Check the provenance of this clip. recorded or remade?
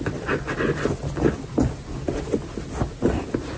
recorded